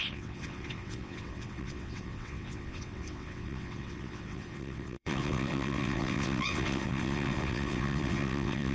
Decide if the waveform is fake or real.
fake